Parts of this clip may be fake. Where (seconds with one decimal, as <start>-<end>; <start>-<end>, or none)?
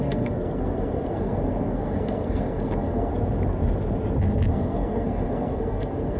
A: 0.0-3.1; 4.5-6.2